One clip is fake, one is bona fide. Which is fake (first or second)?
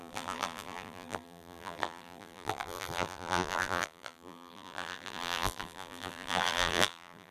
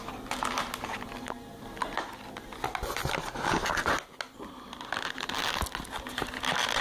first